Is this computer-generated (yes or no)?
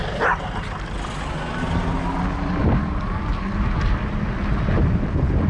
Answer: no